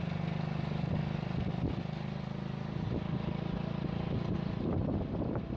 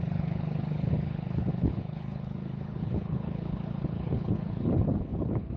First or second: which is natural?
first